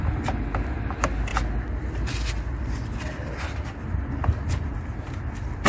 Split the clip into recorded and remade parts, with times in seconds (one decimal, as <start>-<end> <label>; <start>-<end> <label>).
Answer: 0.0-5.7 recorded